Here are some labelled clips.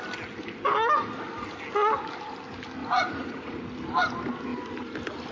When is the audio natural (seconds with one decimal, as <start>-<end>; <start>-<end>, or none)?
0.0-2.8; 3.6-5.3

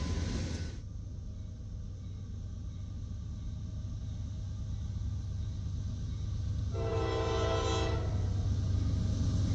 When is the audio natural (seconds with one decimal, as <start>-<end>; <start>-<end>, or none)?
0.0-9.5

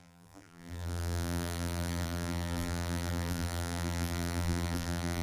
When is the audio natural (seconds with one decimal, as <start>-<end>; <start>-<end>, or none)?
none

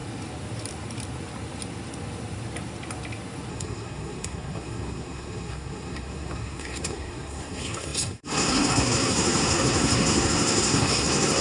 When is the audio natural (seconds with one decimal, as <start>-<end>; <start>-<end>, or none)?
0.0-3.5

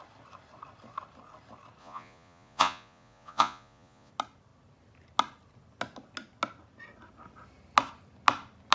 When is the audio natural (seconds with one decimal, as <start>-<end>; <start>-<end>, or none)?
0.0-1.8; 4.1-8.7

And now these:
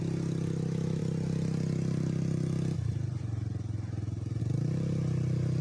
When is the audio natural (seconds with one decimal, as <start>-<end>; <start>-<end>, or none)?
0.0-5.6

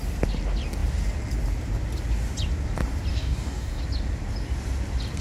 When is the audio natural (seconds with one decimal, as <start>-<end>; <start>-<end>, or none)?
0.0-3.1; 3.8-5.2